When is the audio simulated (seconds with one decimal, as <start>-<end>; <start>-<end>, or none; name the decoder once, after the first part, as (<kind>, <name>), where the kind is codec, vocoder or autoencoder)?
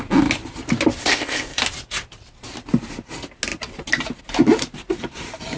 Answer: 1.0-1.6 (codec, ZipCodec)